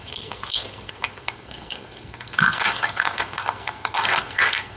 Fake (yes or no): yes